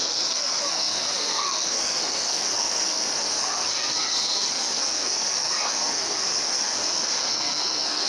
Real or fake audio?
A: fake